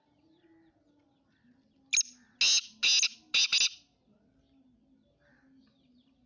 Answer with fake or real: real